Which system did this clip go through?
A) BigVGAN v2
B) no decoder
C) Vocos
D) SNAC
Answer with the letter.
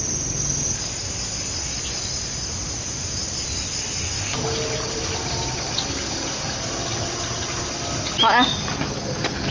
B